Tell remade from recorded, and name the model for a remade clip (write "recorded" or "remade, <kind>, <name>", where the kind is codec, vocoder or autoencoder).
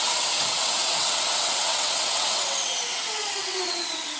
remade, vocoder, WaveNeXt